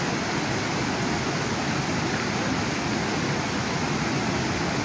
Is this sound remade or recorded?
recorded